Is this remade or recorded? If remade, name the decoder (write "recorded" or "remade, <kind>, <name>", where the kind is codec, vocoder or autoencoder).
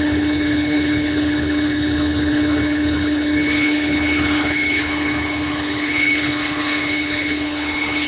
remade, codec, HILCodec